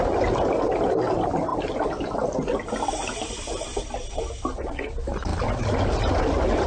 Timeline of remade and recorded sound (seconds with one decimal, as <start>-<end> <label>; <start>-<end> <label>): 0.0-6.7 recorded